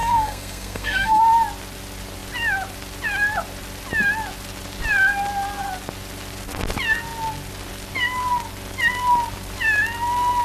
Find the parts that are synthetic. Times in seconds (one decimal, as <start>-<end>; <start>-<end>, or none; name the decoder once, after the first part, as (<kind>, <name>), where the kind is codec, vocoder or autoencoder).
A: 0.0-1.2 (codec, SNAC)